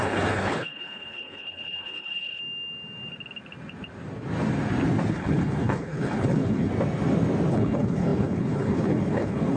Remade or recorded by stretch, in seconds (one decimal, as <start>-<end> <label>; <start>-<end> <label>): 0.0-2.4 remade; 2.4-5.1 recorded; 5.1-6.7 remade; 6.7-7.5 recorded; 7.5-9.6 remade

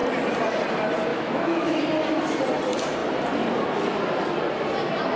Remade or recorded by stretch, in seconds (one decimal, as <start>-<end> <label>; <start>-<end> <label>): 0.0-1.1 recorded; 1.1-1.8 remade; 1.8-5.2 recorded

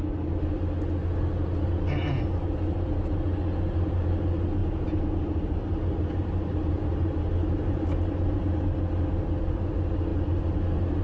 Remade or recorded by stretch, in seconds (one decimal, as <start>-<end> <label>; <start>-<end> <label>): 0.0-4.6 recorded; 4.6-8.4 remade; 8.4-10.1 recorded; 10.1-11.0 remade

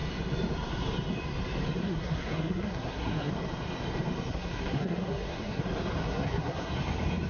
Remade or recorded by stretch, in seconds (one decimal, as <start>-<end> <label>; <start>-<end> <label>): 0.0-1.8 recorded; 1.8-3.3 remade; 3.3-4.3 recorded; 4.3-5.6 remade; 5.6-6.0 recorded; 6.0-6.7 remade; 6.7-7.3 recorded

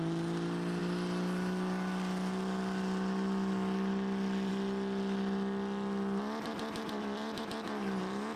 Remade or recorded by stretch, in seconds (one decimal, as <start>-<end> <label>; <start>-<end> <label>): 0.0-8.4 recorded

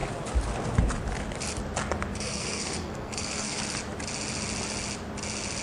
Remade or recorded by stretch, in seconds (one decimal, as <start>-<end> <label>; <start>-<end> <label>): 0.0-2.1 recorded; 2.1-3.6 remade; 3.6-5.6 recorded

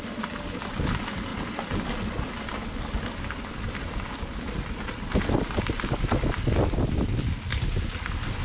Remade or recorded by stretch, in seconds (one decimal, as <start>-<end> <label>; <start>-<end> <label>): 0.0-8.4 recorded